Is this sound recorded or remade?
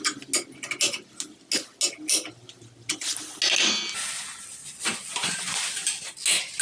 recorded